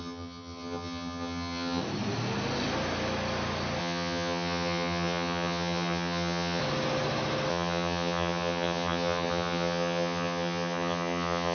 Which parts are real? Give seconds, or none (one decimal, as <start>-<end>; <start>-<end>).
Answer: 1.8-3.8; 6.6-7.5